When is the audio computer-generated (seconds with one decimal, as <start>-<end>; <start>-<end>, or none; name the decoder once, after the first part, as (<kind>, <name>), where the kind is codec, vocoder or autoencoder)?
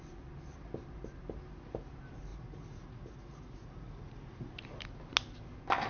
2.3-4.5 (vocoder, Vocos)